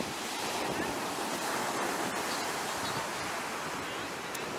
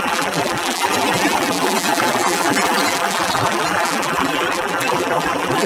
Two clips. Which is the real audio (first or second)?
first